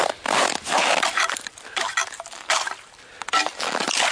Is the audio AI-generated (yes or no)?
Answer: no